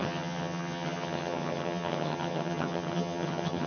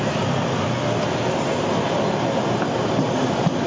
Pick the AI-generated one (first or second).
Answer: first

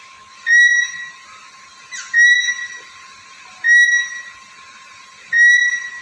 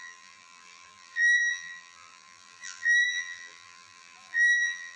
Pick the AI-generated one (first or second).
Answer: second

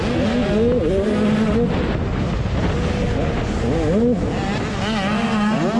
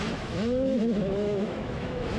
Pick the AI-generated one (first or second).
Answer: second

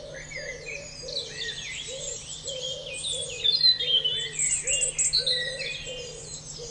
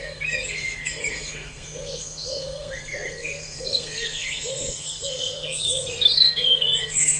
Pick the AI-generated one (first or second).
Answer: second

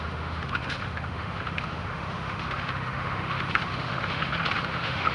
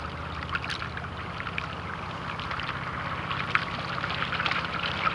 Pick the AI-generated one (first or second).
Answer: first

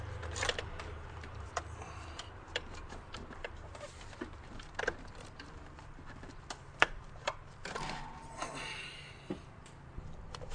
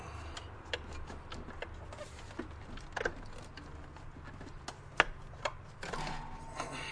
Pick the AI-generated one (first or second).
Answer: first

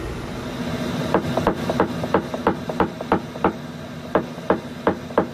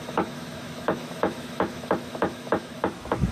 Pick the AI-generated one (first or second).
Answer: second